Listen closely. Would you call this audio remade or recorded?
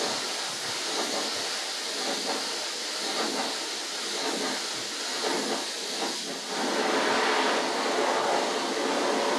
recorded